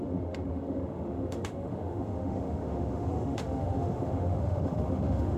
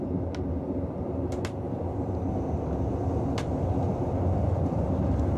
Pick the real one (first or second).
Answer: second